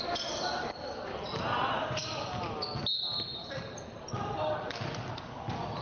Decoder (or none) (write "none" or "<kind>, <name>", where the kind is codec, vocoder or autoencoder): none